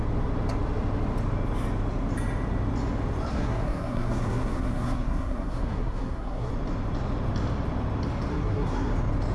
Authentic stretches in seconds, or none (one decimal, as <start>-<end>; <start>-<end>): 0.0-3.3; 6.5-8.3; 8.9-9.3